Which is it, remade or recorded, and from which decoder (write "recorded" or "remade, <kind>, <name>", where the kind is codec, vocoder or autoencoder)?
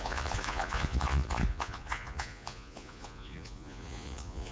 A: remade, vocoder, Vocos